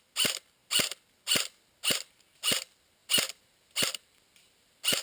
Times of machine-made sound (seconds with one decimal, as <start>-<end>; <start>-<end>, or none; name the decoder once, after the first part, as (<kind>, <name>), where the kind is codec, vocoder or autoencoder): none